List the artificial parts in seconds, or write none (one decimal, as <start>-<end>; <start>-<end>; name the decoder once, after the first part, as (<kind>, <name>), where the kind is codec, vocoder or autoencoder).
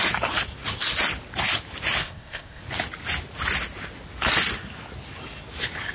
2.0-2.6 (codec, ZipCodec)